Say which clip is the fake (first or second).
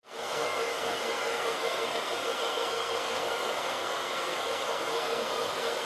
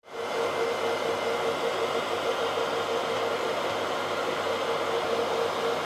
first